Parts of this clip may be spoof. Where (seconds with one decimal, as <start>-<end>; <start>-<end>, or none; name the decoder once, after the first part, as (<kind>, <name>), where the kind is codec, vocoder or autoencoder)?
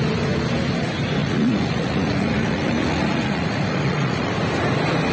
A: 1.2-4.3 (vocoder, Vocos)